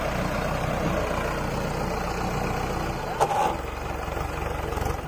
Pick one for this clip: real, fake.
real